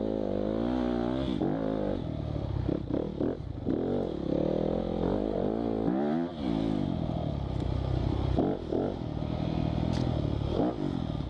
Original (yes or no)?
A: yes